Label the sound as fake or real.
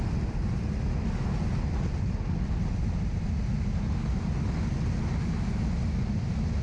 real